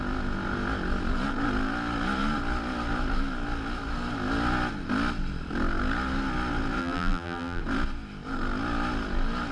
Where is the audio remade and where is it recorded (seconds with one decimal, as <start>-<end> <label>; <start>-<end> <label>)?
0.0-6.8 recorded; 6.8-7.6 remade; 7.6-9.5 recorded